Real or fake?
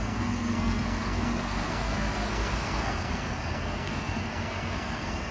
fake